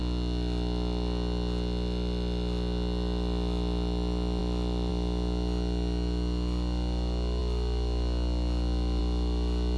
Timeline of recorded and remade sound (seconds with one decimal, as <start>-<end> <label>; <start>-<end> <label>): 0.0-9.8 recorded